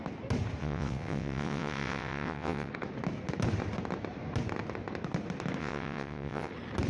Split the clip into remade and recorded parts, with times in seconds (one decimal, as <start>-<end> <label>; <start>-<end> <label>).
0.0-0.6 recorded; 0.6-2.7 remade; 2.7-5.6 recorded; 5.6-6.5 remade; 6.5-6.9 recorded